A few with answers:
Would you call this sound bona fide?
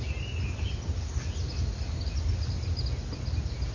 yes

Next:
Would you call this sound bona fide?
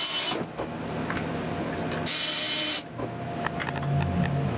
yes